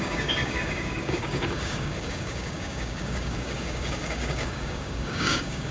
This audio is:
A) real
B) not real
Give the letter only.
B